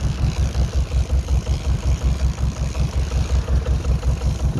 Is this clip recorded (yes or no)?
yes